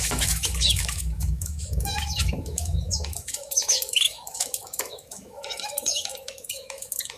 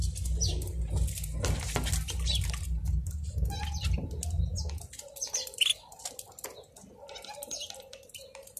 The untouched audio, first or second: second